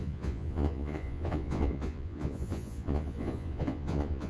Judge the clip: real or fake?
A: fake